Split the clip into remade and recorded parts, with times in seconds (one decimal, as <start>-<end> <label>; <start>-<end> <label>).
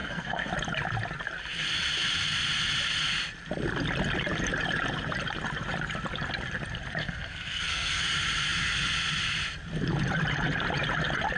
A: 0.0-0.5 remade; 0.5-7.0 recorded; 7.0-8.0 remade; 8.0-11.4 recorded